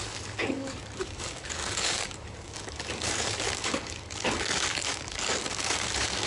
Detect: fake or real fake